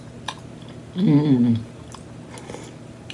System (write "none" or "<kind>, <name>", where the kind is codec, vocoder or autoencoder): none